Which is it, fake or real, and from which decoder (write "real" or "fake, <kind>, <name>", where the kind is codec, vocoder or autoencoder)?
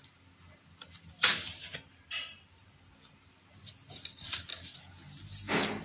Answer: real